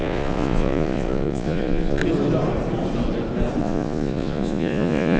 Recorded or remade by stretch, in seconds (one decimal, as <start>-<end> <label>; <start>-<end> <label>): 0.0-2.0 remade; 2.0-3.6 recorded; 3.6-5.2 remade